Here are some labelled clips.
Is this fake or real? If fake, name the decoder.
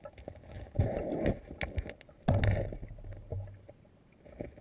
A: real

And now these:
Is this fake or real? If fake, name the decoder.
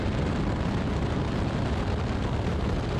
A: real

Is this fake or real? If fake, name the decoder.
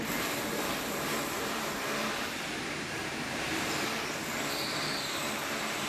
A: fake, vocoder, BigVGAN v2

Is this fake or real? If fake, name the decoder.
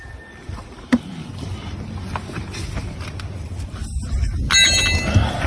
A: real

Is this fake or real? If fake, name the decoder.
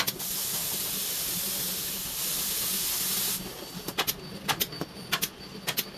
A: real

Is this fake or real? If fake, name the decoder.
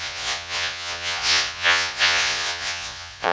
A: fake, vocoder, Vocos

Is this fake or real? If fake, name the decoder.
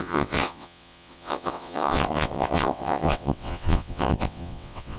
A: fake, vocoder, WaveNeXt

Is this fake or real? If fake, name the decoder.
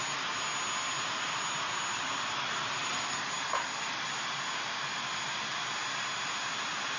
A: real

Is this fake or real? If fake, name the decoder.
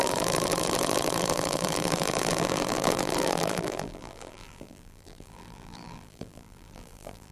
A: fake, vocoder, BigVGAN v2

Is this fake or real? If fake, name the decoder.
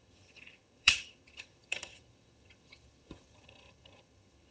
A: fake, vocoder, HiFi-GAN